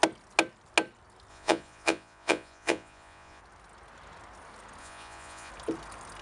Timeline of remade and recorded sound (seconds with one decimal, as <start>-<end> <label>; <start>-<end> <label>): 0.0-1.3 recorded; 1.3-3.4 remade; 3.4-4.8 recorded; 4.8-5.5 remade; 5.5-6.2 recorded